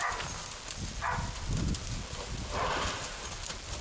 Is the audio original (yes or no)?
yes